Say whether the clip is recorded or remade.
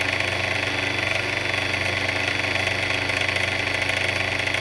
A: recorded